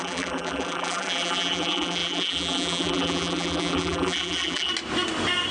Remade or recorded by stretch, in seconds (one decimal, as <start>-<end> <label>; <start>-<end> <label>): 0.0-4.7 remade; 4.7-5.5 recorded